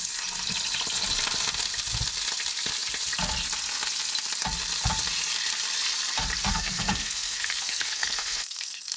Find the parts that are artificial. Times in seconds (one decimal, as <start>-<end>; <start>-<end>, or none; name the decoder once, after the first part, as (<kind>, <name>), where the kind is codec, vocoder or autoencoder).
6.4-9.0 (codec, SNAC)